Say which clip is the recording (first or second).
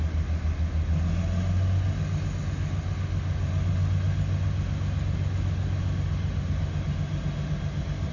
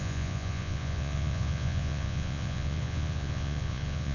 first